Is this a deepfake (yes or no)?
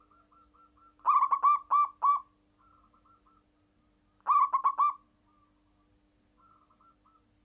no